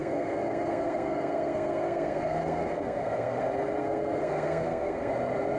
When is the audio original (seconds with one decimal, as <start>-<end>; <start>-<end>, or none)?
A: 3.4-3.8; 5.1-5.6